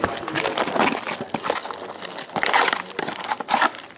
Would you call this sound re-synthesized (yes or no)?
no